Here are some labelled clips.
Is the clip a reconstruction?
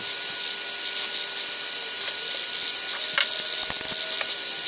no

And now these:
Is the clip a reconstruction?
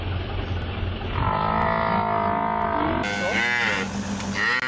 no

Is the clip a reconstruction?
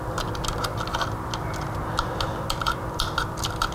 no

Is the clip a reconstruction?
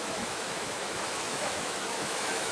yes